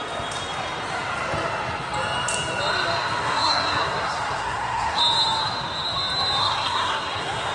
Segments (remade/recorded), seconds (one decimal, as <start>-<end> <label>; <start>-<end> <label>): 0.0-3.2 recorded; 3.2-5.0 remade; 5.0-6.4 recorded; 6.4-7.5 remade